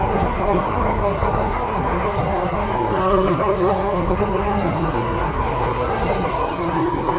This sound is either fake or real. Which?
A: fake